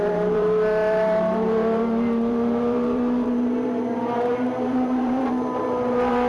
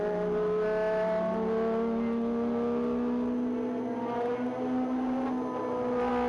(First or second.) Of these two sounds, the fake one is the first